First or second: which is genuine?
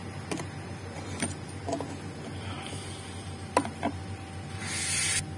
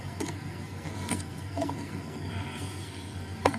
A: first